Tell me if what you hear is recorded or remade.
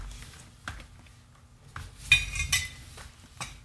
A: recorded